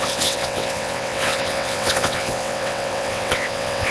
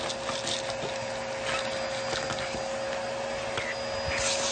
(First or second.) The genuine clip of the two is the second